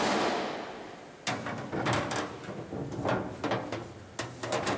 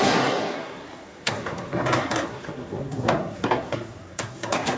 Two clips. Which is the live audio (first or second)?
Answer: first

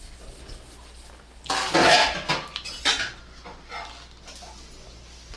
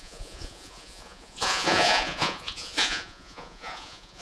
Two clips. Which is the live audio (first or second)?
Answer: first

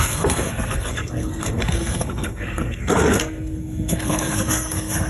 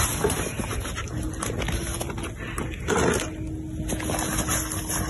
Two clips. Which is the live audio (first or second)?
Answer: second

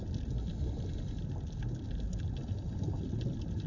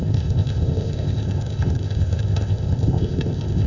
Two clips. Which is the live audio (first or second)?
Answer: first